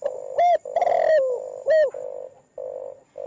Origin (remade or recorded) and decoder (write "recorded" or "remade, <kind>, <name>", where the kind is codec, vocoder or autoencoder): recorded